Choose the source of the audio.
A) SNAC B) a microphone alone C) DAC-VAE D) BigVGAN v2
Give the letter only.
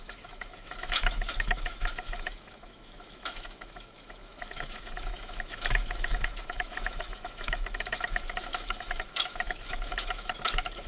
C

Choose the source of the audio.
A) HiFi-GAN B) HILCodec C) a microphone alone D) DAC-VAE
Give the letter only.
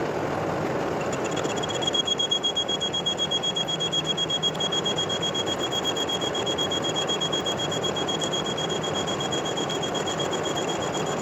C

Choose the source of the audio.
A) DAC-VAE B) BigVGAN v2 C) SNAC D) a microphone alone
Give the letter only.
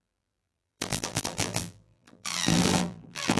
B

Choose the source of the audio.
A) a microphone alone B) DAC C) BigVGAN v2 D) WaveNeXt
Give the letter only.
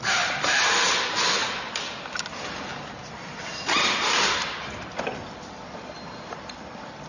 A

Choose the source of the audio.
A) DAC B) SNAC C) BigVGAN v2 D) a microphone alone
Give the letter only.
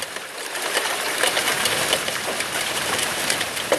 C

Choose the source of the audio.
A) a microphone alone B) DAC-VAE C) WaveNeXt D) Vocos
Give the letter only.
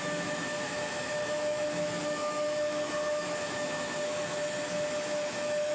B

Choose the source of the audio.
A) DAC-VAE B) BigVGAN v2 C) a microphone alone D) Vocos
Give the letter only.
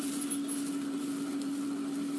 C